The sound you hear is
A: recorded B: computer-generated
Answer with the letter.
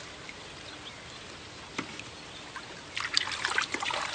A